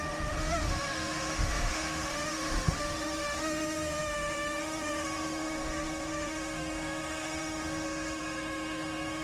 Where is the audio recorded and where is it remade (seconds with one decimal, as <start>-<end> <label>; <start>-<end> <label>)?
0.0-9.2 remade